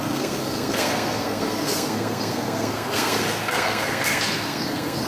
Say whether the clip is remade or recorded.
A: remade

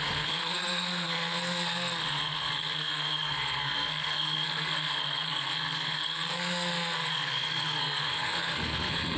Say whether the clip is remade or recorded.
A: remade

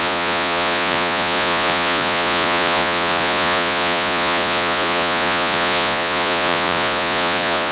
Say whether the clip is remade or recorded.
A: remade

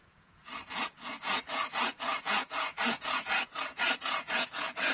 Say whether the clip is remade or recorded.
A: remade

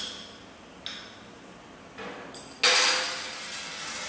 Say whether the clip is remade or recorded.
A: recorded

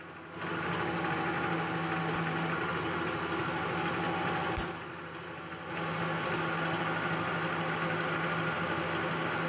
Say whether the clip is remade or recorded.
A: recorded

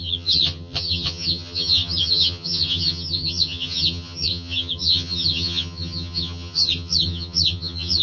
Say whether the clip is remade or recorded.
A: remade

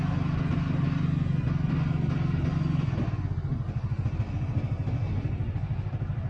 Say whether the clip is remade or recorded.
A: recorded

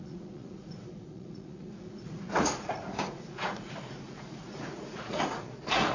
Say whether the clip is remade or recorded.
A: remade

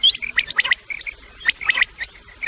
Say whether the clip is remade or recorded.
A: recorded